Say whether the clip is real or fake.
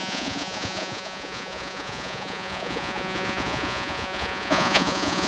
fake